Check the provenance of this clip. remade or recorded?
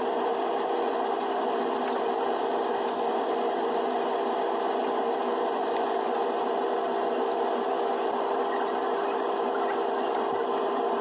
recorded